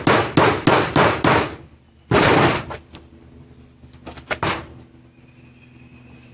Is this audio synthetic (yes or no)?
no